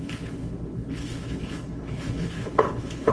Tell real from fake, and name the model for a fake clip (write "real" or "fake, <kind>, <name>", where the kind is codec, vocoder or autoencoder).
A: fake, codec, HILCodec